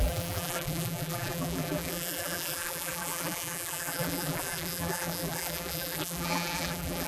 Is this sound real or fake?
fake